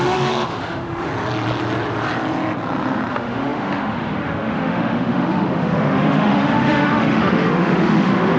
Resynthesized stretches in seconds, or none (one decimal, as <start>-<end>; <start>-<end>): 0.0-1.1; 3.1-8.4